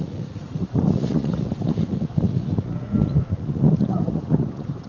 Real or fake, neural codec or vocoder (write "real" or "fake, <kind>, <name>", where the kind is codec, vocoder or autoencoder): fake, vocoder, Vocos